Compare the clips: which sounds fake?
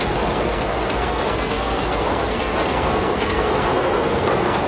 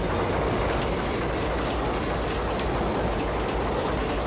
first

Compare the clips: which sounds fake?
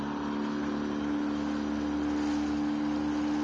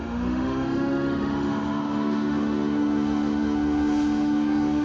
second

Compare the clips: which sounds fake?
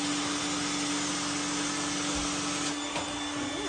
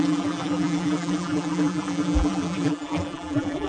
second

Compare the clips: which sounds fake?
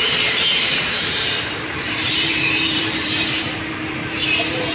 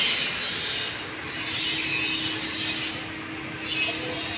first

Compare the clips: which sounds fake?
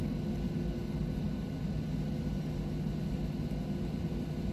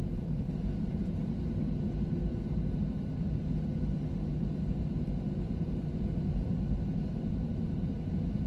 second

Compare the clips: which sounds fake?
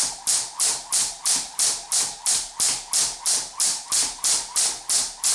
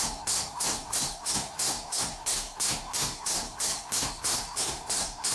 second